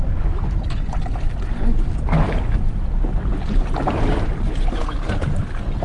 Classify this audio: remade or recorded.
recorded